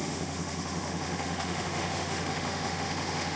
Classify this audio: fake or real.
fake